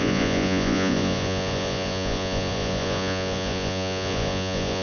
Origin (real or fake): fake